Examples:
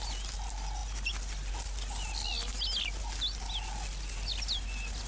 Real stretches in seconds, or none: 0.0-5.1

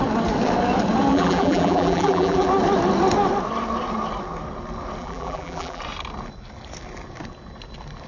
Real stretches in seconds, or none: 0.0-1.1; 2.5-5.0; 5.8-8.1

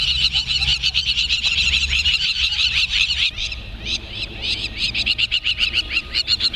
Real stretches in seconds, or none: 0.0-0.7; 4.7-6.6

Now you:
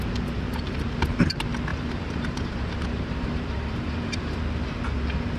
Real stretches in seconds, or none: 0.0-1.7; 4.4-5.4

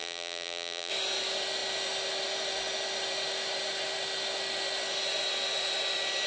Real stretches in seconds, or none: 0.9-6.3